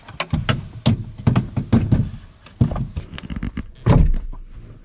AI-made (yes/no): no